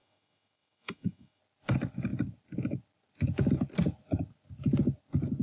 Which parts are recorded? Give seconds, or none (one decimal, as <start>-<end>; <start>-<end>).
1.4-5.4